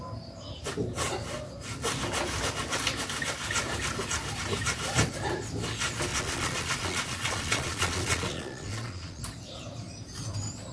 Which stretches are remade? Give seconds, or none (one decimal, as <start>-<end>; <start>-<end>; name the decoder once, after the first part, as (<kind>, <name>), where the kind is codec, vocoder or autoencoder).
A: 6.1-9.2 (vocoder, Vocos)

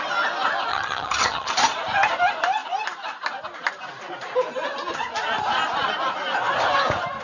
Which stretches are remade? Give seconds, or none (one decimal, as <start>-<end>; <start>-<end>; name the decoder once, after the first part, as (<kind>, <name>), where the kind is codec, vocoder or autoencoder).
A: 0.7-1.5 (vocoder, HiFi-GAN)

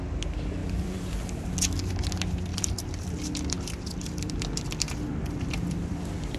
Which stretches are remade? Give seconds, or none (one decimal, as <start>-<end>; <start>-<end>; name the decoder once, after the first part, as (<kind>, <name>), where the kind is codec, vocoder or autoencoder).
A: 0.6-1.3 (vocoder, BigVGAN v2); 2.5-6.4

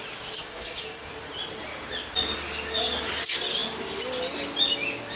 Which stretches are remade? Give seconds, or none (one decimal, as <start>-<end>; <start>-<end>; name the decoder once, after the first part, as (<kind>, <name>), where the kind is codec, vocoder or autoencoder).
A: 0.4-1.1 (codec, DAC)

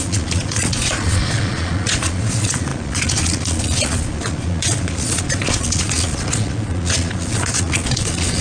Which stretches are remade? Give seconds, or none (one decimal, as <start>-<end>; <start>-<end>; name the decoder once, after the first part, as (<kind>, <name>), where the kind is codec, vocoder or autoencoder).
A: 0.0-8.4 (vocoder, Vocos)

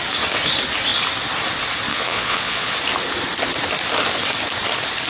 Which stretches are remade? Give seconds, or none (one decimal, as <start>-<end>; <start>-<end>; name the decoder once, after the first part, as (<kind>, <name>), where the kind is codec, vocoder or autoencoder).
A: 1.9-2.7 (vocoder, Vocos)

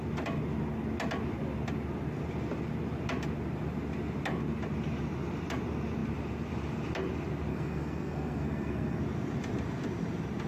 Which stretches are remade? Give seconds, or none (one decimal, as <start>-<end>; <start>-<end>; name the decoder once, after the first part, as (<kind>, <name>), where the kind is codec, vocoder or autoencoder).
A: 7.5-9.0 (codec, SNAC)

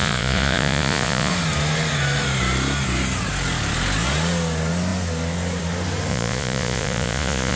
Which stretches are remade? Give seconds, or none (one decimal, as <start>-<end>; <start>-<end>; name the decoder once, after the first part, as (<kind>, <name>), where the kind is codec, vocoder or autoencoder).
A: 0.0-1.3 (vocoder, Vocos); 6.1-7.6